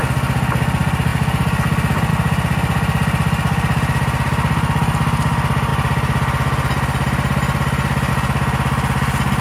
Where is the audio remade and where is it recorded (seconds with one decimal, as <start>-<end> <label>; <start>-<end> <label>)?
0.0-9.4 recorded